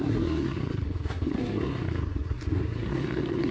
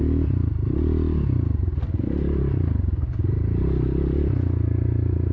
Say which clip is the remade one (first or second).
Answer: first